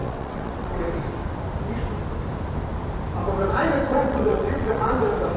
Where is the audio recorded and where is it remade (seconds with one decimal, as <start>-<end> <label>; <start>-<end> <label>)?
0.0-0.8 remade; 0.8-3.9 recorded; 3.9-5.0 remade; 5.0-5.4 recorded